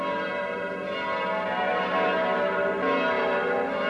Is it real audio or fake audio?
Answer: real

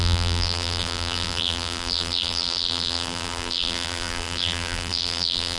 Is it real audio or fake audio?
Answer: fake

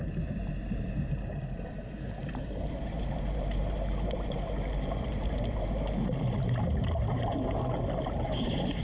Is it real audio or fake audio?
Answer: fake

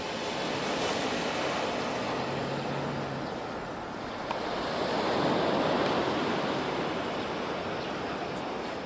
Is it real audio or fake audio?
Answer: real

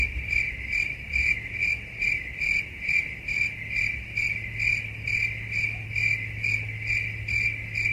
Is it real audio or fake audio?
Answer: real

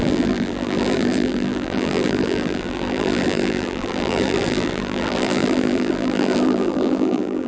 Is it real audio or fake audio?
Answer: fake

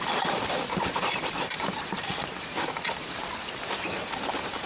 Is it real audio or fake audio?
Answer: fake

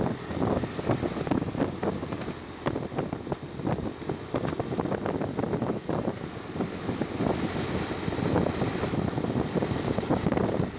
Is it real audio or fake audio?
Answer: real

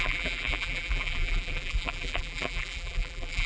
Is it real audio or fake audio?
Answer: fake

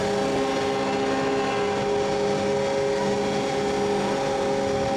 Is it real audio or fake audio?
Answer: real